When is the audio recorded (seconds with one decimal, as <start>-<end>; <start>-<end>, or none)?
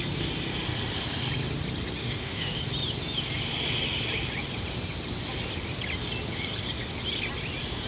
0.0-2.0; 2.6-7.9